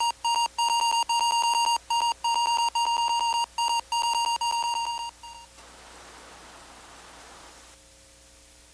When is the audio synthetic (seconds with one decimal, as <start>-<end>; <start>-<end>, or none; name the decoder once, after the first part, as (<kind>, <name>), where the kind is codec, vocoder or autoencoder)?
0.0-3.3 (vocoder, BigVGAN v2); 4.4-4.9; 7.2-8.7